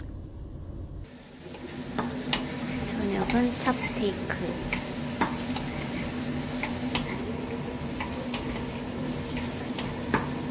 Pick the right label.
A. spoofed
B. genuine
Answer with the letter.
B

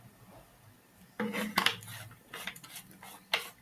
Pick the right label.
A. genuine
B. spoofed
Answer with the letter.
A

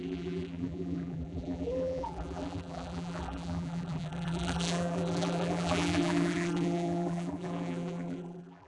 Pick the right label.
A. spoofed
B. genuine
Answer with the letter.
A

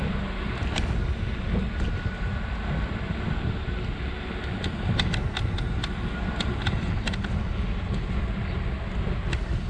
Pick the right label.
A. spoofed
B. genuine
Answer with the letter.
B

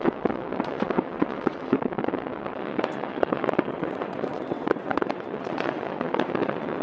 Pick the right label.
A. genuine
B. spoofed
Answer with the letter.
B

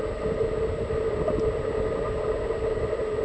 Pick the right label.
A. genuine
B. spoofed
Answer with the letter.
A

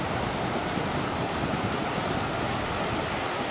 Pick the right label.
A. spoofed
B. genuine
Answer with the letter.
B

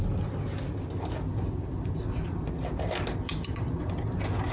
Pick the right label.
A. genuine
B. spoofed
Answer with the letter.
A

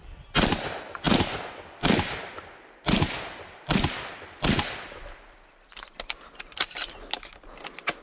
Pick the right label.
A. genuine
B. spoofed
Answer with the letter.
A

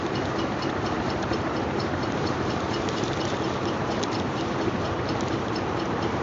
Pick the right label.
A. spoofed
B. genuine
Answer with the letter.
A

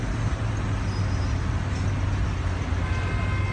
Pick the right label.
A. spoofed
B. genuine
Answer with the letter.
B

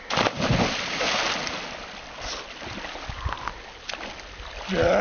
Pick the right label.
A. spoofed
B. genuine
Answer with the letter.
B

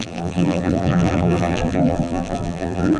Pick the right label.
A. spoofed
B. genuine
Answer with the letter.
A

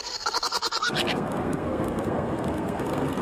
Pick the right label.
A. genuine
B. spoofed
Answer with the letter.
B